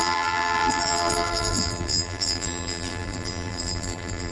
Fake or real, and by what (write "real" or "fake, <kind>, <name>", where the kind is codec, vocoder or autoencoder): fake, vocoder, BigVGAN v2